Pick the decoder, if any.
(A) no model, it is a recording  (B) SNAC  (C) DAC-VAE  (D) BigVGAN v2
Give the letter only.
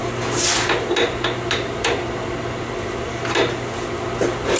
A